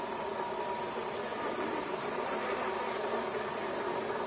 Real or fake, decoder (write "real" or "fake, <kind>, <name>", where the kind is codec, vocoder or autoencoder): real